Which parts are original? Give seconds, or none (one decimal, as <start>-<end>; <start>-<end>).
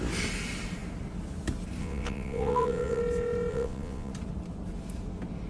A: 0.0-1.8; 3.0-3.5; 4.1-5.5